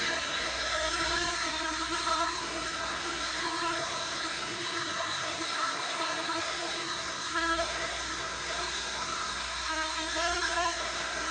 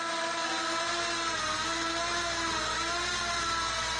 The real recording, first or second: second